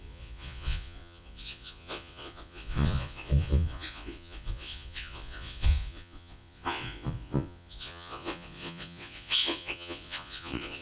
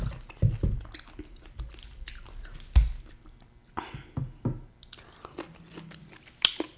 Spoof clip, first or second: first